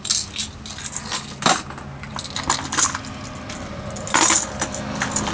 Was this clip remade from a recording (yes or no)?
no